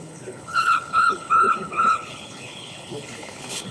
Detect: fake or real fake